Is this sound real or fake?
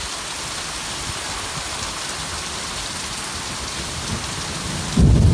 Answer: real